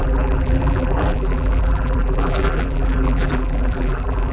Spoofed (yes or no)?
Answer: yes